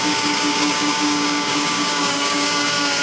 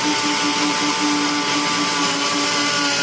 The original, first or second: second